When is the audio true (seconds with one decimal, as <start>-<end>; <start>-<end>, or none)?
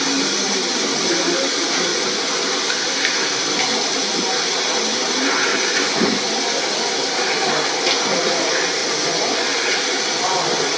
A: 0.0-1.9; 2.6-5.5; 6.2-8.8; 9.7-10.8